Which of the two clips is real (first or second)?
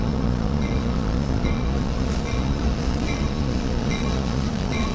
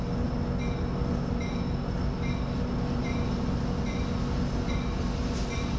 second